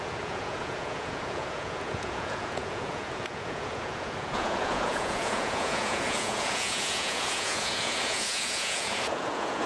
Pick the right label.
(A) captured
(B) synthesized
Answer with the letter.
B